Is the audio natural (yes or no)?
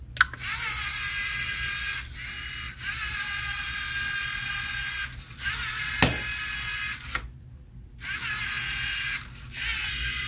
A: yes